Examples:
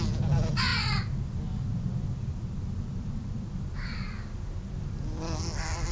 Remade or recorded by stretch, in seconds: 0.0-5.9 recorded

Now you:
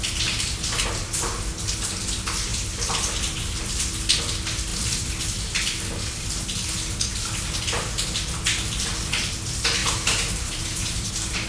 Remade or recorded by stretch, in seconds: 0.0-9.8 recorded; 9.8-11.1 remade; 11.1-11.5 recorded

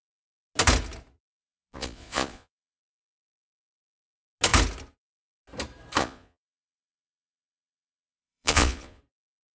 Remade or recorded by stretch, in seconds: 0.0-1.4 recorded; 1.4-2.8 remade; 2.8-6.0 recorded; 6.0-9.0 remade; 9.0-9.5 recorded